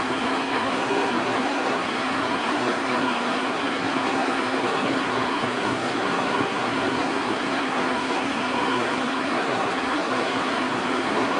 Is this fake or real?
fake